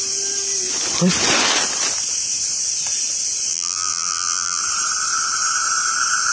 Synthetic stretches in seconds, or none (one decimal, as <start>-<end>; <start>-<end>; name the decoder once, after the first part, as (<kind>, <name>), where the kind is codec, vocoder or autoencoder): 3.5-4.6 (vocoder, BigVGAN v2)